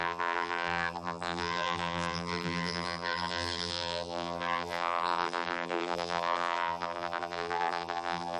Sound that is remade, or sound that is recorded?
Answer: remade